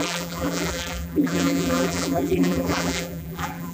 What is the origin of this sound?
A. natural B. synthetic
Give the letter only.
B